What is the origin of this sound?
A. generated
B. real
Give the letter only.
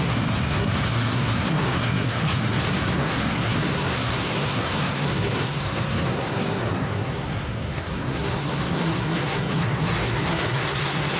A